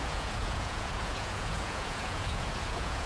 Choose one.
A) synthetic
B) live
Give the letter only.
A